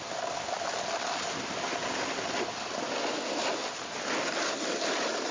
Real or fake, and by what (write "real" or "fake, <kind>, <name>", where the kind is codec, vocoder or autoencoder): real